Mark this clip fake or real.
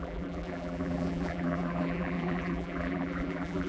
fake